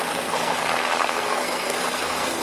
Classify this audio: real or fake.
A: fake